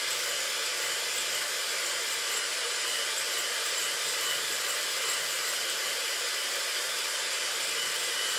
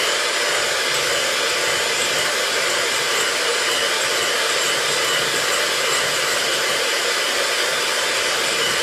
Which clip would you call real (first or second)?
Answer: second